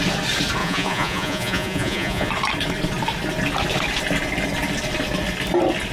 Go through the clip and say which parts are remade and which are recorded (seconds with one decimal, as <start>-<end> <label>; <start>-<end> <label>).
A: 0.0-0.6 recorded; 0.6-2.3 remade; 2.3-5.9 recorded